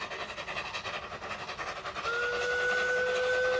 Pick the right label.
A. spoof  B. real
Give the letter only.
B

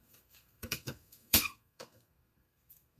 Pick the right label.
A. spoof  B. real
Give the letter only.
A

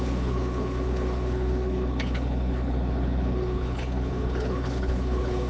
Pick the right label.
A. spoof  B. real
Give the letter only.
A